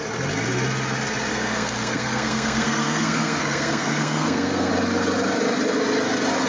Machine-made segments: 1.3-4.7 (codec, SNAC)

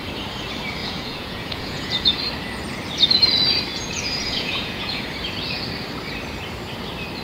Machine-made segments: 0.8-2.2 (vocoder, Vocos); 3.7-5.0

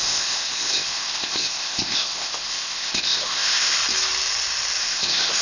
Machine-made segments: 0.0-3.8 (codec, ZipCodec); 4.8-5.4

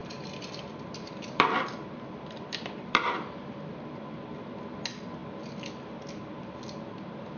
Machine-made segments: 0.0-3.7 (vocoder, BigVGAN v2)

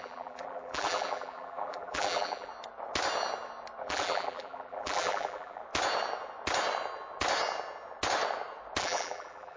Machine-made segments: 0.0-2.5 (vocoder, BigVGAN v2); 3.8-5.6; 8.8-9.6

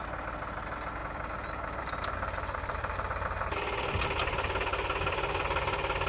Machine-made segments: 1.0-3.1 (vocoder, BigVGAN v2)

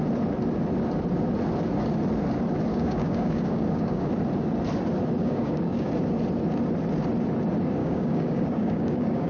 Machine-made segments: 2.7-4.1 (codec, DAC); 5.2-5.9; 7.8-9.3